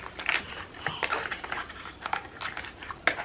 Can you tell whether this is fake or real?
real